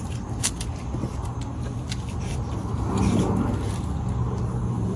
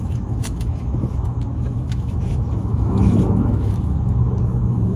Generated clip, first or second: second